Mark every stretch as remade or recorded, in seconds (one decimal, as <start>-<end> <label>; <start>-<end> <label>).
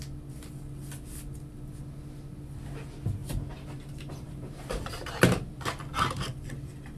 0.0-3.2 recorded; 3.2-5.6 remade; 5.6-7.0 recorded